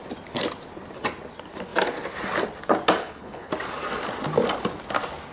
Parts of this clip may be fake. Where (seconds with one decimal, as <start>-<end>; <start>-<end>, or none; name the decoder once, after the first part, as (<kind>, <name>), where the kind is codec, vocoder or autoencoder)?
3.0-3.5 (codec, HILCodec)